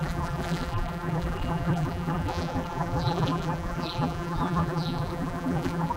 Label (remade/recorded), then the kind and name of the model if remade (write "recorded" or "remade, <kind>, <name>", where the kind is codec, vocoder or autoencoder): remade, vocoder, BigVGAN v2